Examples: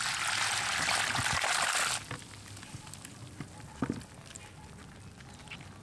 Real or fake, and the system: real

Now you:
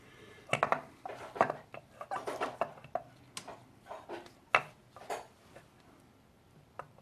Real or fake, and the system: real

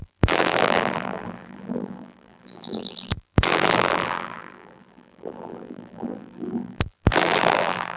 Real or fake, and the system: fake, vocoder, BigVGAN v2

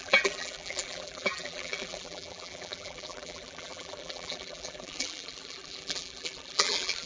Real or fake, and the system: fake, vocoder, BigVGAN v2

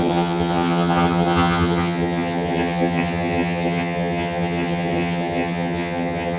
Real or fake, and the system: fake, vocoder, HiFi-GAN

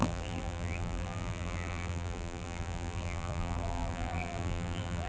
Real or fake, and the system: fake, vocoder, BigVGAN v2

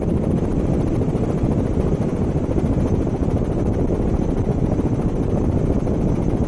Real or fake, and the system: real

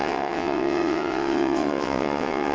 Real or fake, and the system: fake, vocoder, WaveNeXt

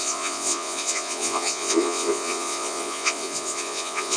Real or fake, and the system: fake, vocoder, Vocos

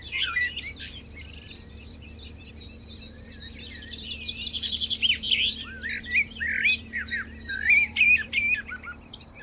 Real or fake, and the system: fake, vocoder, BigVGAN v2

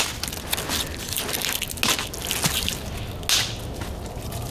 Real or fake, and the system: real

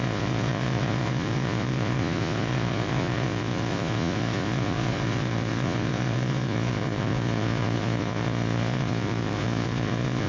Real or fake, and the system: fake, vocoder, Vocos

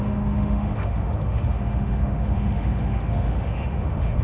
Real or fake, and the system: fake, autoencoder, DAC-VAE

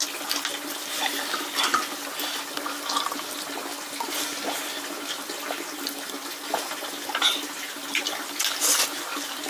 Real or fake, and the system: real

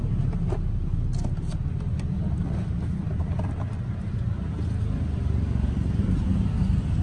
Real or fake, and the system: real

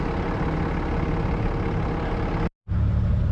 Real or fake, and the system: real